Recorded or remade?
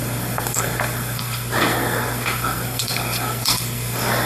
remade